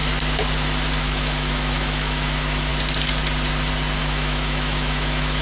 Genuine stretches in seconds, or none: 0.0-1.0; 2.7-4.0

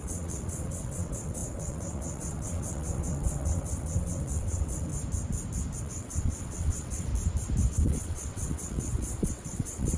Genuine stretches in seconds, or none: 4.9-5.8; 7.1-7.7

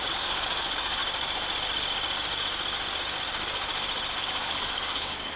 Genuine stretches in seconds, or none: 1.0-4.2

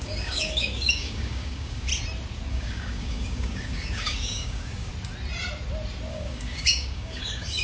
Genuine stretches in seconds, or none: 1.9-2.5; 4.9-6.1